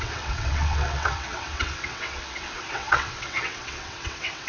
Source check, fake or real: fake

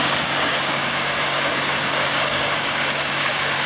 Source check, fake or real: fake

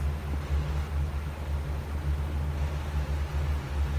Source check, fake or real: real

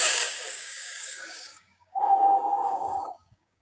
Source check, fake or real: fake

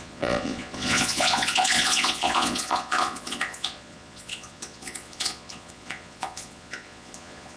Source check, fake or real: fake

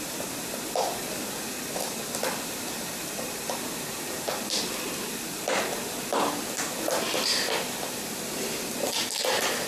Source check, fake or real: real